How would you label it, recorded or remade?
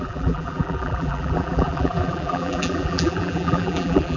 remade